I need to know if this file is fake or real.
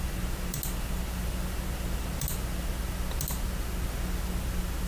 real